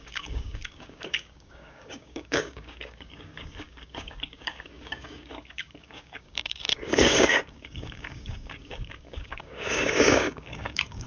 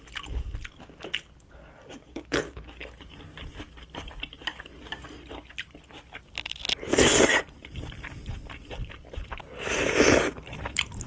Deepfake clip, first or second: first